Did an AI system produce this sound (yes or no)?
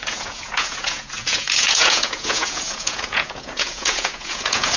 yes